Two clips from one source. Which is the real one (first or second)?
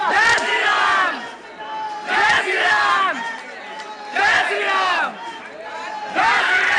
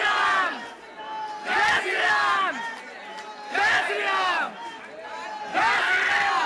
second